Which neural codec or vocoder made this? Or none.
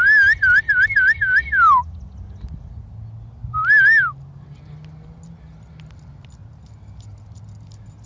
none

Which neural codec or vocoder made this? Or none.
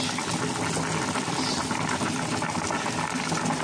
none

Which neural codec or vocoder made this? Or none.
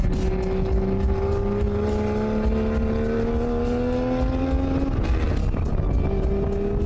none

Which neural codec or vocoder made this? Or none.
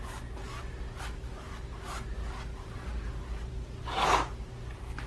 none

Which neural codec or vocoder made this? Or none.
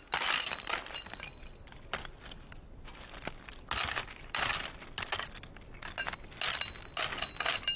none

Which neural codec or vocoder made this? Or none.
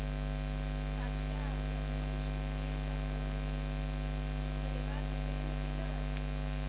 none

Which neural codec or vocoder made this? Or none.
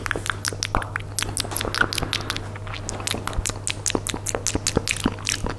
none